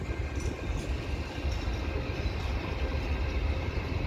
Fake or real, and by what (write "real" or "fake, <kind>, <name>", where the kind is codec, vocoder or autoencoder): real